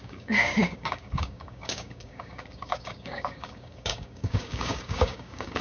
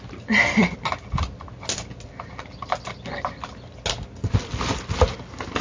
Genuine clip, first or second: second